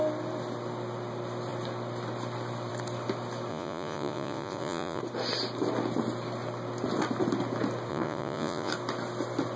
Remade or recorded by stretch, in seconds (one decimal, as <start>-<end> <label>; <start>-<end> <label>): 0.0-3.5 recorded; 3.5-5.0 remade; 5.0-7.9 recorded; 7.9-8.7 remade; 8.7-9.6 recorded